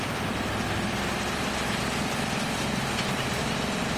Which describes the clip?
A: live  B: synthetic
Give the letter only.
A